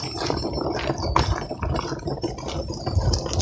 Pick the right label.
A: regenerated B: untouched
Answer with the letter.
B